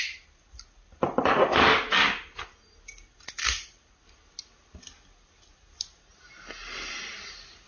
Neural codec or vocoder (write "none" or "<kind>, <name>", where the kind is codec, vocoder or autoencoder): none